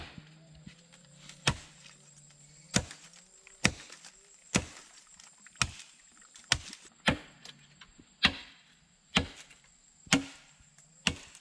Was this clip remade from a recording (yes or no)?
no